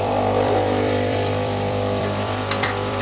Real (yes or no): no